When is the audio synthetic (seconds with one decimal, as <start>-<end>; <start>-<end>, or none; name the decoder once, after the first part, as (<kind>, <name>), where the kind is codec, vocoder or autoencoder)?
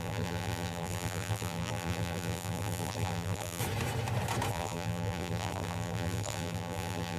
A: 0.0-3.6 (vocoder, BigVGAN v2); 4.5-7.2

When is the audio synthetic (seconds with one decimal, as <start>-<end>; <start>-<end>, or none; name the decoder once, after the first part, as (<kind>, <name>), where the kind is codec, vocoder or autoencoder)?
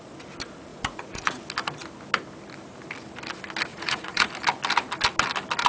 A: 0.7-1.4 (vocoder, Vocos); 3.7-4.3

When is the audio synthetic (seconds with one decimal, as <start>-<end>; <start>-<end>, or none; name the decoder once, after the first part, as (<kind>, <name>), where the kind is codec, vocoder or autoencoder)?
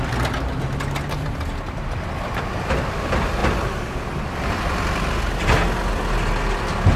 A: none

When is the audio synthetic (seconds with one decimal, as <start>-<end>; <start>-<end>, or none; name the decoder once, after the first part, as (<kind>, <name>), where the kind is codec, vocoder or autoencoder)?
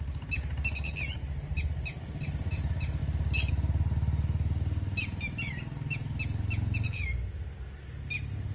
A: none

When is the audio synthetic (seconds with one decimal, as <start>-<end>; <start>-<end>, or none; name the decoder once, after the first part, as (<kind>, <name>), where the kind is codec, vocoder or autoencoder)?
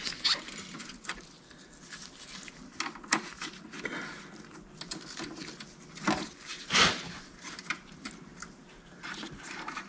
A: 6.5-9.9 (vocoder, BigVGAN v2)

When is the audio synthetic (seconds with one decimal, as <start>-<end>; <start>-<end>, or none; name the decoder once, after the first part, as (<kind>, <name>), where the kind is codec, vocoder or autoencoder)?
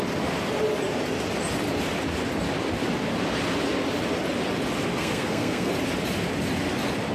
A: 4.9-5.7 (codec, SNAC)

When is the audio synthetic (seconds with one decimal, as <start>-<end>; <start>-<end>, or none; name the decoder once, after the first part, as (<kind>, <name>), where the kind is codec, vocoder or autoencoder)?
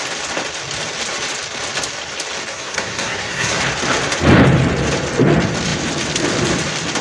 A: 2.5-3.6 (codec, SNAC)